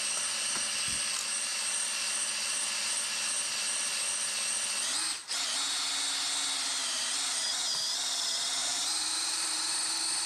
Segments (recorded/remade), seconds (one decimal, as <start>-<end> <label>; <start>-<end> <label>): 0.0-6.8 recorded; 6.8-7.5 remade; 7.5-8.6 recorded; 8.6-10.3 remade